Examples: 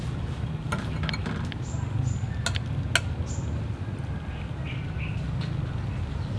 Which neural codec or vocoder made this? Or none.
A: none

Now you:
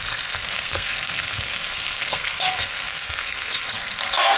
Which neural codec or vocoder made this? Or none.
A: codec, SNAC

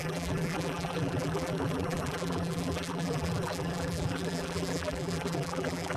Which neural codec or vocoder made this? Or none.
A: vocoder, BigVGAN v2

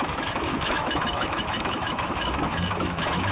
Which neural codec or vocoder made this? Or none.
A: autoencoder, DAC-VAE